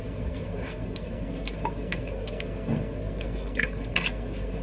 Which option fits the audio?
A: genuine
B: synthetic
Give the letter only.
B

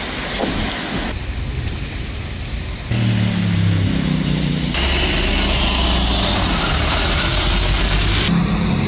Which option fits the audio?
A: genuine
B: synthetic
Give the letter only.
A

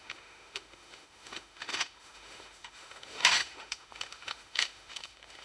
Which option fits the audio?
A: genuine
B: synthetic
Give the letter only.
B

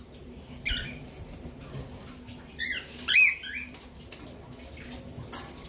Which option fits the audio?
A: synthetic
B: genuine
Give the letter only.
B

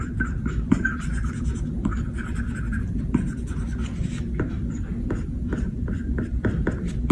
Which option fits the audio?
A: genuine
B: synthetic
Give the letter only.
B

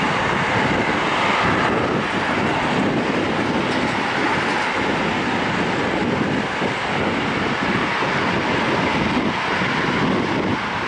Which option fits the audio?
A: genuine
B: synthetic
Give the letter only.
A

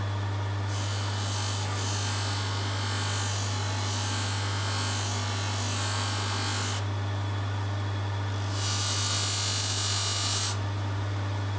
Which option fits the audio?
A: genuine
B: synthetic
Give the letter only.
A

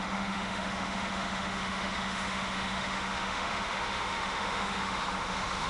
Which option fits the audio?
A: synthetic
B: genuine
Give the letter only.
A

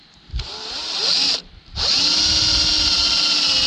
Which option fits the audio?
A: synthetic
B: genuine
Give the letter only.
B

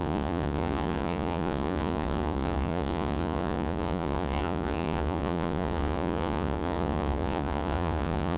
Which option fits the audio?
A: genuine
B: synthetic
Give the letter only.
B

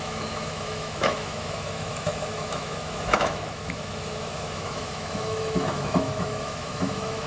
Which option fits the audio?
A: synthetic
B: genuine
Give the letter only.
A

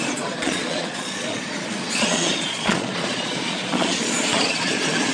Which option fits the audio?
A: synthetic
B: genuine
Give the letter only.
A